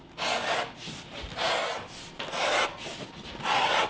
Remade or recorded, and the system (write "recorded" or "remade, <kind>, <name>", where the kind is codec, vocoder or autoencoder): recorded